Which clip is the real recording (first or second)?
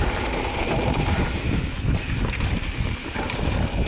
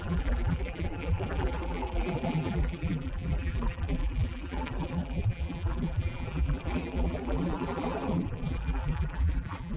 first